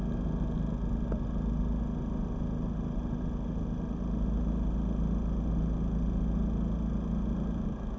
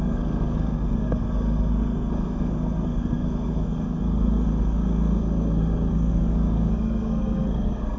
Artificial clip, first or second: second